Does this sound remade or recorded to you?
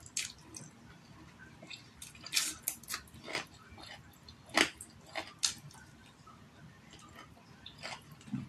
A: recorded